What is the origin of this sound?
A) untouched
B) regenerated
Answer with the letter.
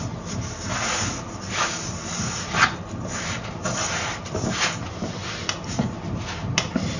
A